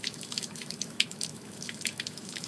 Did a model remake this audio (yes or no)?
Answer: yes